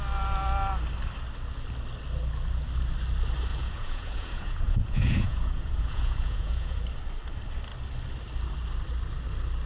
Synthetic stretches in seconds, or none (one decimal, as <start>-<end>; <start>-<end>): 3.5-6.8